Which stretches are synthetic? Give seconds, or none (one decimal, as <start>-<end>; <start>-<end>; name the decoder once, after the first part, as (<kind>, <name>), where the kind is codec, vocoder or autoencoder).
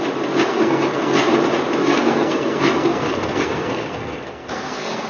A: 0.5-1.3 (codec, SNAC); 1.8-5.1